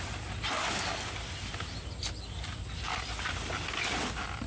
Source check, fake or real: real